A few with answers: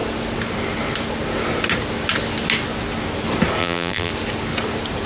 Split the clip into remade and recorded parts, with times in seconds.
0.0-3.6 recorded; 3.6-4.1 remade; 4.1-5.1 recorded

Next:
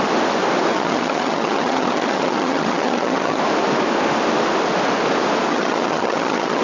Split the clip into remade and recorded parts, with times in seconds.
0.0-0.7 recorded; 0.7-3.4 remade; 3.4-5.5 recorded; 5.5-6.6 remade